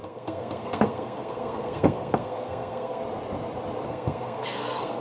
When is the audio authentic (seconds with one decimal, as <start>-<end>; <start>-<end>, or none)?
3.0-3.9